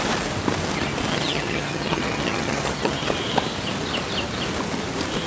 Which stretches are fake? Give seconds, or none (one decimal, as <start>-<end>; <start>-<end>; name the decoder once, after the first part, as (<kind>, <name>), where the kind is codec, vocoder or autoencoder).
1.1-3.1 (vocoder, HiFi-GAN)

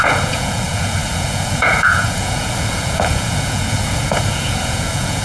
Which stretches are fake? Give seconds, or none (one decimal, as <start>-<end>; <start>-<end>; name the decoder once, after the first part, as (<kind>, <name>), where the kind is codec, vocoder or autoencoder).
0.0-5.2 (vocoder, Vocos)

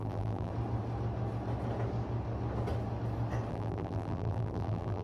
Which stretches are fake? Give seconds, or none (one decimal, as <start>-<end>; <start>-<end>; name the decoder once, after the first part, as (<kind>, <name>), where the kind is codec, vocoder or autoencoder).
0.0-0.5 (vocoder, BigVGAN v2); 3.5-5.0